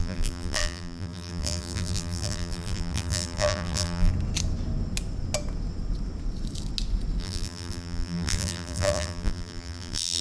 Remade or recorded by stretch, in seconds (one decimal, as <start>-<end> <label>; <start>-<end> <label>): 0.0-4.1 remade; 4.1-7.2 recorded; 7.2-10.2 remade

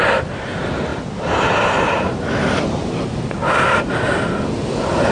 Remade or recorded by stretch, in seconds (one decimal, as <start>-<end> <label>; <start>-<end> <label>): 0.0-0.9 recorded; 0.9-3.9 remade; 3.9-5.1 recorded

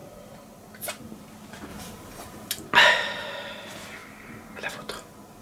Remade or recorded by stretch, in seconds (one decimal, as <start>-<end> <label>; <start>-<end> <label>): 0.0-1.7 recorded; 1.7-2.5 remade; 2.5-5.4 recorded